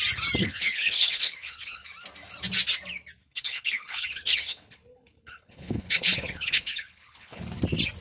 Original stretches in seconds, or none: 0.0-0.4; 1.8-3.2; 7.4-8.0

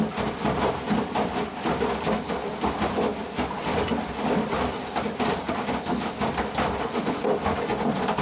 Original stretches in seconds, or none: 0.0-8.2

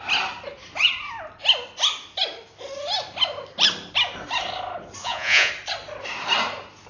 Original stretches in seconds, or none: 0.0-5.0; 5.5-6.9

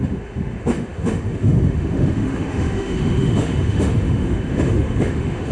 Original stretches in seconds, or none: none

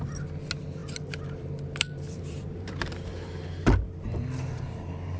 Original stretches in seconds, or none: 0.0-0.8; 2.8-5.2